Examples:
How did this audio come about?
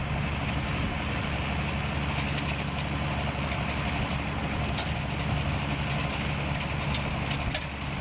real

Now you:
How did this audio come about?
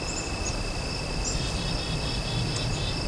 fake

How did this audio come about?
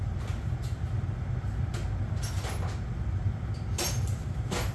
real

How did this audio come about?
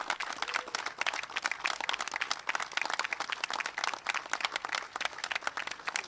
real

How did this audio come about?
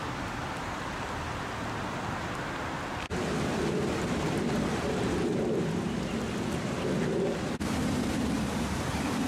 real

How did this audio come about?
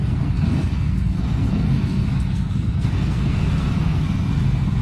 fake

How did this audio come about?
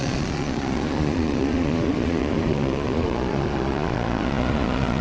fake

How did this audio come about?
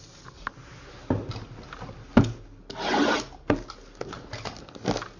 real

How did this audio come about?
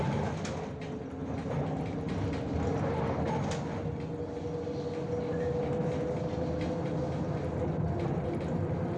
real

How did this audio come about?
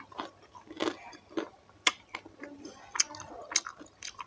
real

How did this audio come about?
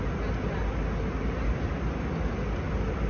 real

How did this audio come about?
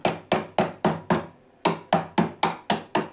real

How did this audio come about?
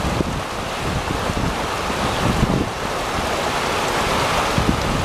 real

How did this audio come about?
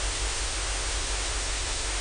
fake